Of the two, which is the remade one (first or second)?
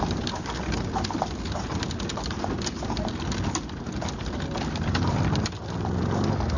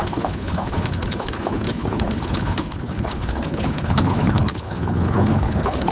second